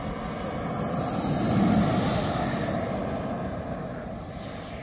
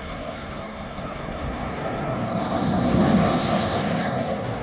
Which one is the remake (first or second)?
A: second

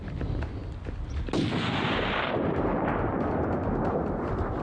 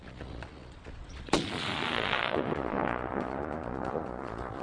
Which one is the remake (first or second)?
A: second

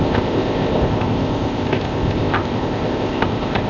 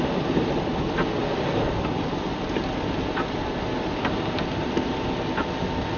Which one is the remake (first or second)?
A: first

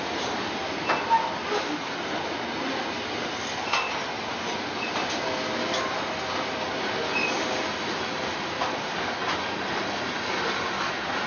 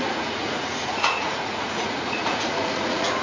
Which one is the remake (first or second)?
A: second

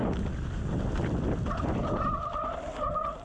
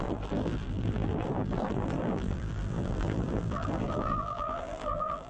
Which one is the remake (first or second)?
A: second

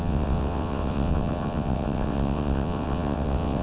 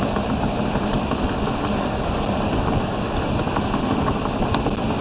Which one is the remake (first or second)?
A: first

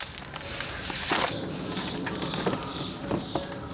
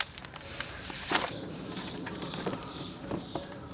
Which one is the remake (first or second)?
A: second